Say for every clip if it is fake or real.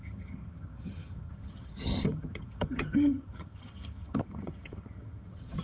fake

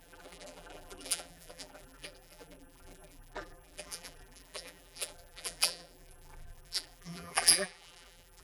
fake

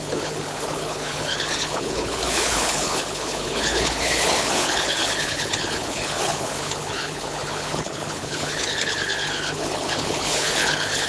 fake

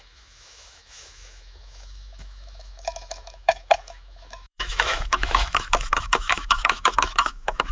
fake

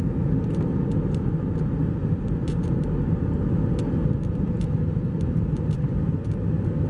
real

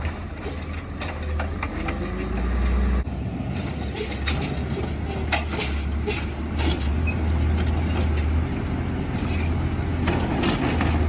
real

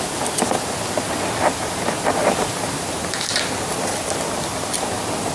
real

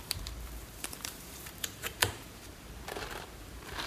fake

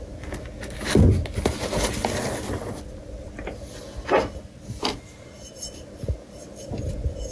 real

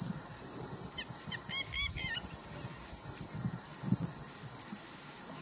real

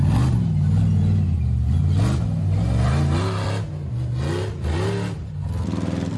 real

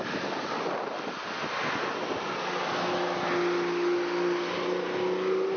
real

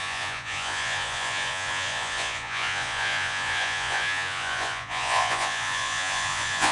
fake